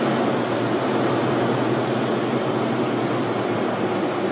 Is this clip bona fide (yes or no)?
yes